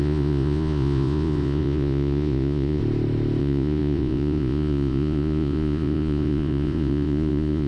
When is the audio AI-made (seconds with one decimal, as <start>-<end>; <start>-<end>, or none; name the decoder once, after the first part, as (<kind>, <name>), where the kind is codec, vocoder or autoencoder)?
0.0-2.8 (vocoder, Vocos); 3.4-7.7